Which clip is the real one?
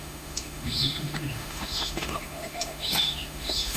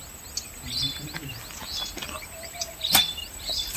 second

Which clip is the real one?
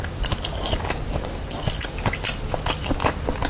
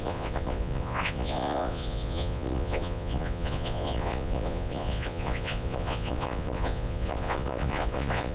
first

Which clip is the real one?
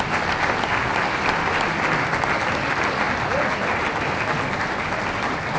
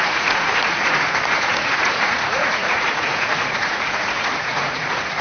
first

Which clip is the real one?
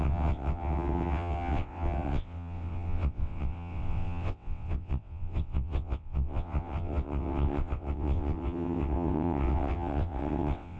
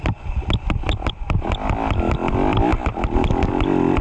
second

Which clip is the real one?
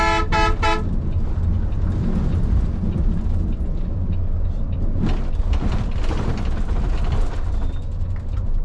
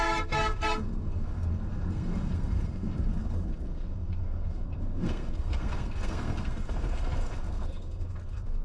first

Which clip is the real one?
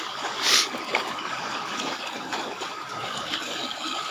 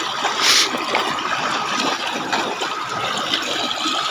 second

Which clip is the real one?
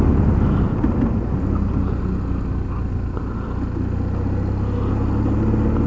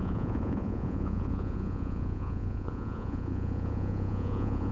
first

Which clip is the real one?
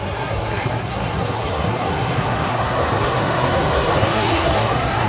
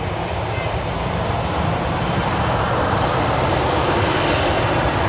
second